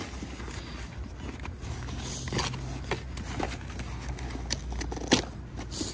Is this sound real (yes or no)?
yes